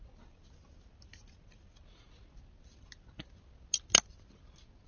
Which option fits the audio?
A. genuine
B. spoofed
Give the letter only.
A